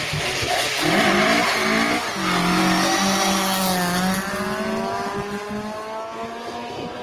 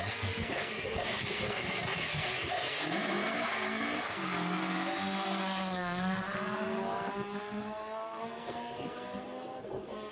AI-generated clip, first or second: second